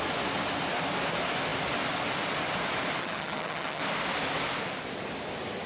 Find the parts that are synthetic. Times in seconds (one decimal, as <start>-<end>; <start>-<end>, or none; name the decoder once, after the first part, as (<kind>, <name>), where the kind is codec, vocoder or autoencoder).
3.0-3.8 (vocoder, HiFi-GAN)